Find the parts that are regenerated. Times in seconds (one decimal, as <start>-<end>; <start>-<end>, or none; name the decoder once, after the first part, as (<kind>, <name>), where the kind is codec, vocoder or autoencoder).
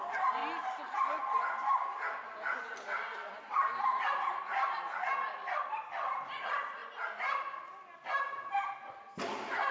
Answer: none